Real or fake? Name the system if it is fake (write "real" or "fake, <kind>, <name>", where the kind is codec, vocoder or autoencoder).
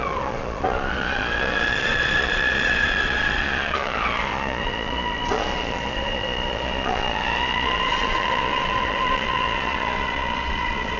fake, vocoder, Vocos